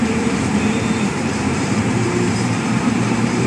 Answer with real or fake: fake